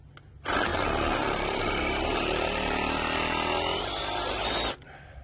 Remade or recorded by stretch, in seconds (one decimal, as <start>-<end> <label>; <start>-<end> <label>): 0.0-5.2 recorded